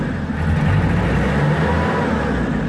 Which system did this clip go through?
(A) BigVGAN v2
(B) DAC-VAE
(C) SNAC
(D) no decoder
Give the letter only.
D